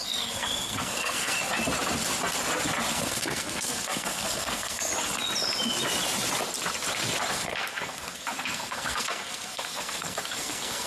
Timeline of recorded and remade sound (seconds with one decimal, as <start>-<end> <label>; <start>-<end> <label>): 0.0-1.4 remade; 1.4-2.9 recorded; 2.9-4.9 remade; 4.9-7.3 recorded; 7.3-10.9 remade

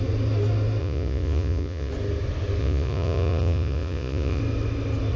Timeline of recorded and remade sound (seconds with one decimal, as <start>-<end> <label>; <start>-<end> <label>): 0.0-0.8 recorded; 0.8-1.9 remade; 1.9-2.6 recorded; 2.6-4.4 remade; 4.4-5.2 recorded

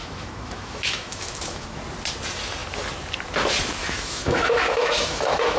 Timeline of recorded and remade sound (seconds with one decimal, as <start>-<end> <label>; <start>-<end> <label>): 0.0-1.8 remade; 1.8-3.8 recorded; 3.8-5.6 remade

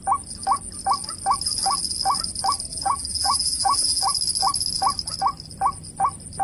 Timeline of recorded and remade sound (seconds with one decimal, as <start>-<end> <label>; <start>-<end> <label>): 0.0-2.7 recorded; 2.7-4.0 remade; 4.0-6.4 recorded

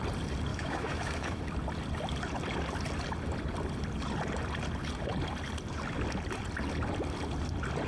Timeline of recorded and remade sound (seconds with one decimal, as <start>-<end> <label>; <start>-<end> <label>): 0.0-0.5 recorded; 0.5-1.4 remade; 1.4-7.9 recorded

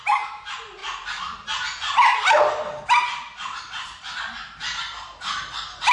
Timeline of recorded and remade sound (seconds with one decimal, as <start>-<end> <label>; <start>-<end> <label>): 0.0-5.9 recorded

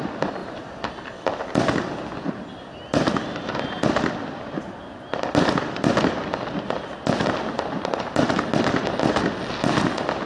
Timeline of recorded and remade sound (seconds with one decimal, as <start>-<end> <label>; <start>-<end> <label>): 0.0-10.3 recorded

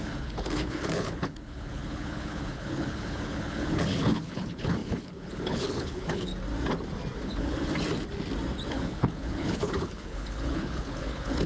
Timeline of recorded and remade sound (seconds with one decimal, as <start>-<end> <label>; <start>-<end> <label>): 0.0-6.3 remade; 6.3-7.2 recorded; 7.2-7.7 remade; 7.7-8.7 recorded; 8.7-11.5 remade